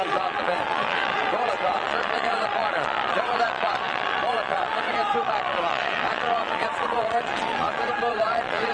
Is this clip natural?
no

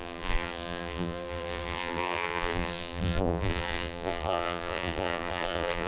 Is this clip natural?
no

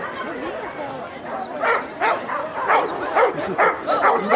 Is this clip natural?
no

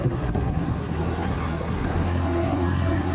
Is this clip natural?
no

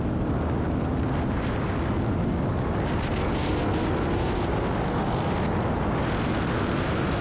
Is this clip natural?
yes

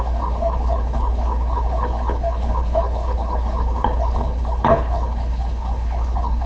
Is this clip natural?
no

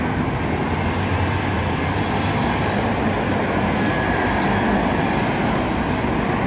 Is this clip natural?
yes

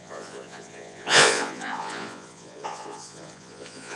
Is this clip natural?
no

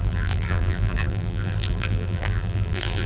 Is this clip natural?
no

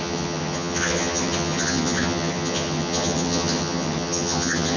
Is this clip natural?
no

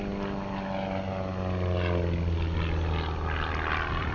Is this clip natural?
yes